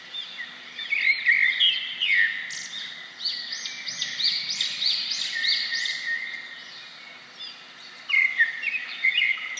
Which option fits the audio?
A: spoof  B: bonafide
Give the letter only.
B